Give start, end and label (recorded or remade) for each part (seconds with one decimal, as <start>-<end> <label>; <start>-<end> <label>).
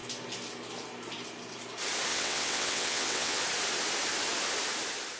0.0-2.1 recorded; 2.1-3.4 remade; 3.4-5.2 recorded